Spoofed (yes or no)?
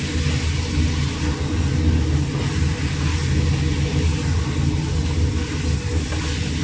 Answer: no